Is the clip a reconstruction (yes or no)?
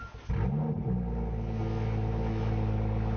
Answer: no